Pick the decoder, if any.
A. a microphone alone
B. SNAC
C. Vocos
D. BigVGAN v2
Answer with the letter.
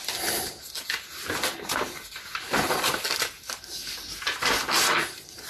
A